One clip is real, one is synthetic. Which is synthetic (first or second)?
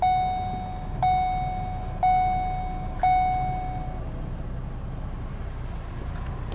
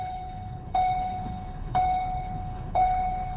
second